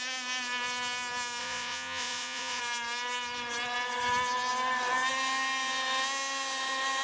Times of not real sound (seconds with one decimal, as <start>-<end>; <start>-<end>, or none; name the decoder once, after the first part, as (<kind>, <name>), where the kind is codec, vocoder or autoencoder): 1.4-2.6 (vocoder, Vocos)